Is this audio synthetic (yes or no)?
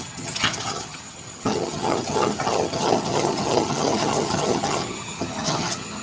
yes